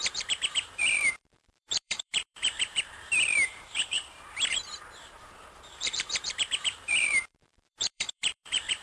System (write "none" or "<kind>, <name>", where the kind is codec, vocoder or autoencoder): vocoder, BigVGAN v2